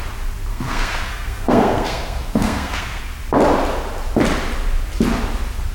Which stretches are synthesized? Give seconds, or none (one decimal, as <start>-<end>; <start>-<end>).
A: 0.5-3.0